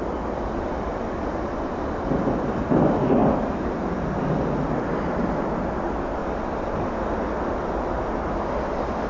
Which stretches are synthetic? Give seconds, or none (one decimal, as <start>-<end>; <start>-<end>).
0.0-9.1